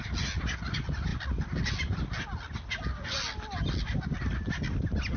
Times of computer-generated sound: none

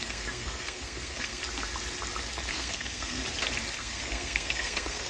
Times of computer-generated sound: 0.0-1.4 (codec, SNAC); 2.5-3.2; 3.8-5.1

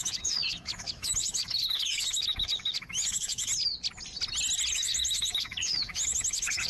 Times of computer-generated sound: 0.0-3.5 (autoencoder, DAC-VAE); 4.7-6.7

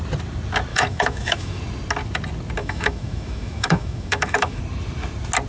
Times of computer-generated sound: 0.7-1.6 (autoencoder, DAC-VAE); 2.6-4.6